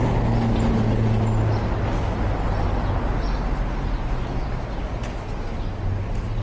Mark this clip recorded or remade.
recorded